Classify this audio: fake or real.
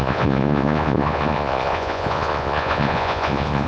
fake